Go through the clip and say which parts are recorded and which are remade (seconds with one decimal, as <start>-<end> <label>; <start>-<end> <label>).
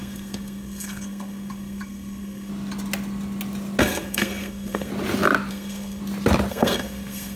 0.0-2.5 remade; 2.5-3.8 recorded; 3.8-4.9 remade; 4.9-5.5 recorded; 5.5-6.0 remade; 6.0-6.5 recorded; 6.5-7.4 remade